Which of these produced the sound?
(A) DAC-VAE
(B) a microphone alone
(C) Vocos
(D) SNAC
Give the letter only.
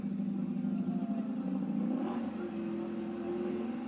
B